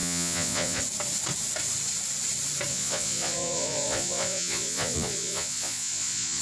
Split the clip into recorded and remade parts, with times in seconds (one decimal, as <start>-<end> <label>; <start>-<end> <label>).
0.0-0.8 remade; 0.8-2.7 recorded; 2.7-6.4 remade